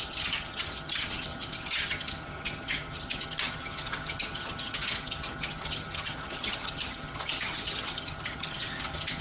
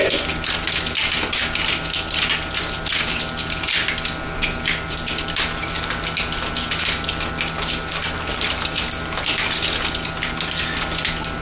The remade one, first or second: first